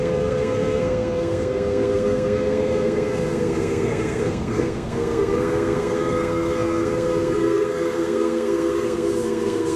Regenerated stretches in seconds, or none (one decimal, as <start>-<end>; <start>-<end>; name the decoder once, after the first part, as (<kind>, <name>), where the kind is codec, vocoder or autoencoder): 0.0-9.8 (codec, SNAC)